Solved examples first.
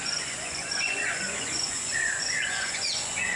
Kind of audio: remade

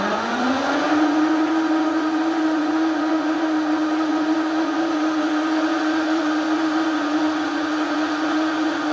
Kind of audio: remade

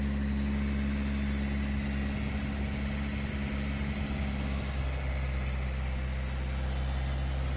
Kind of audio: recorded